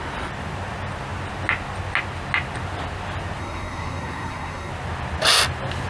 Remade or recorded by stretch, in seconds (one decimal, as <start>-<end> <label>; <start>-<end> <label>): 0.0-3.4 recorded; 3.4-4.7 remade; 4.7-5.9 recorded